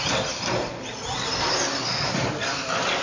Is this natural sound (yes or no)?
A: yes